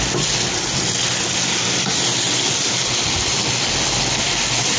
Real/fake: real